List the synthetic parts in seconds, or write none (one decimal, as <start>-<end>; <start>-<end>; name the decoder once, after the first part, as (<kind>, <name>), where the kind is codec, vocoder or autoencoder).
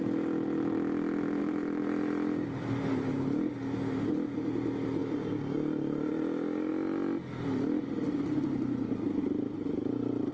5.0-6.1 (codec, DAC)